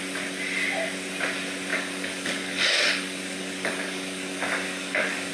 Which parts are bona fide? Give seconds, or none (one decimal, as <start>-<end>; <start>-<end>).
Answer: 0.0-1.7

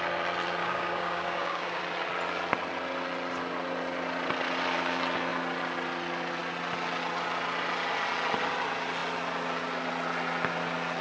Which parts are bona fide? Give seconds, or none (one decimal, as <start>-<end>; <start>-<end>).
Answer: 0.0-0.6; 1.8-11.0

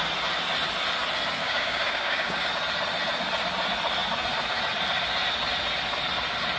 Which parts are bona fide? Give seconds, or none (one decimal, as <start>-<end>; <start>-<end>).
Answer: 0.0-1.4; 2.5-6.6

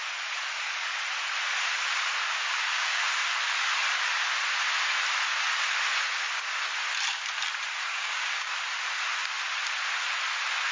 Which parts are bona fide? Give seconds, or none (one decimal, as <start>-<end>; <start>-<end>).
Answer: 0.0-2.5; 3.0-7.9; 8.5-10.7

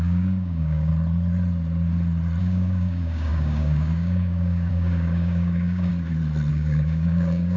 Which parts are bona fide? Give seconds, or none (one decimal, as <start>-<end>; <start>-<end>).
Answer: 0.9-2.4; 5.9-6.5

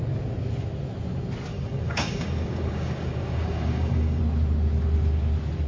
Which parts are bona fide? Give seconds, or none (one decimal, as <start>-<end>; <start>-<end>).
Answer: 0.0-1.5; 4.2-5.7